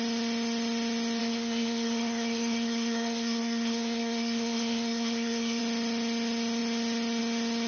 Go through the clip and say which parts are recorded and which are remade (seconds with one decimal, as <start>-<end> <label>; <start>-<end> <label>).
0.0-1.2 recorded; 1.2-5.6 remade; 5.6-7.7 recorded